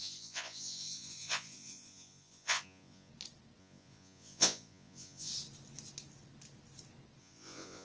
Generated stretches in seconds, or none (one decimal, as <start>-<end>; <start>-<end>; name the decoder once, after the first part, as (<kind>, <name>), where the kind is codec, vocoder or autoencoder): 0.0-3.1 (vocoder, Vocos); 3.6-5.3; 7.2-7.8